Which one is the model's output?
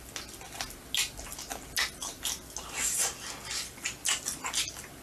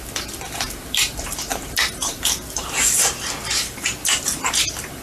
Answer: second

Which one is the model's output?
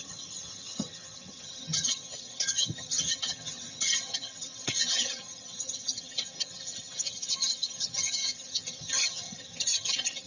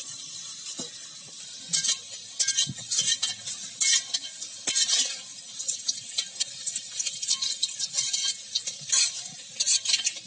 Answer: first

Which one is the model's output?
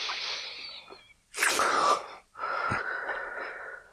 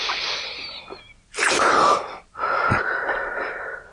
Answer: first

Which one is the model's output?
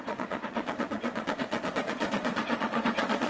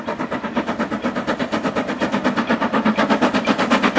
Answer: first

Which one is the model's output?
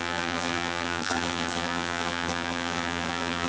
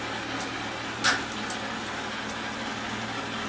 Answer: first